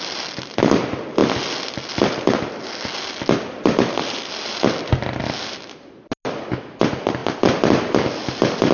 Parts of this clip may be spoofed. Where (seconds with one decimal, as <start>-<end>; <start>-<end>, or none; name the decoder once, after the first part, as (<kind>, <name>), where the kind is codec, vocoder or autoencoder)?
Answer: none